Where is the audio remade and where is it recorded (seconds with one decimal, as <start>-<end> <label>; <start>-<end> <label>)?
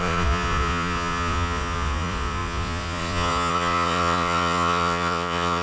0.0-5.6 remade